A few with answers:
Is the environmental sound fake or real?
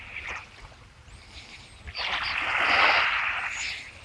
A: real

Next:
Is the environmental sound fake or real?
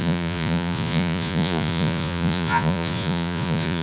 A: fake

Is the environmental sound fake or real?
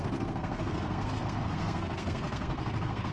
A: fake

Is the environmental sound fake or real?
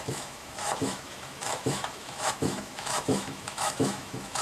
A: fake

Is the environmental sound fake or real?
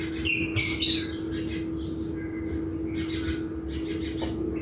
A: real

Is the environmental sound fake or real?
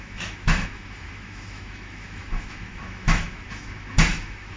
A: fake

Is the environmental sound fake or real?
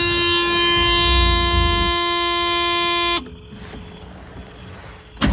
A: real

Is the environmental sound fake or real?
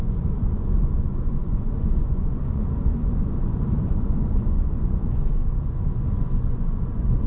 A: fake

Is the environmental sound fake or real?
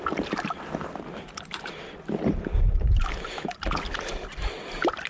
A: real